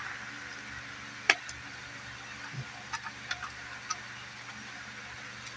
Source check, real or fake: real